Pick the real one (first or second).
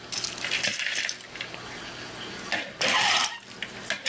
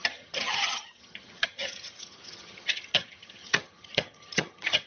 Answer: first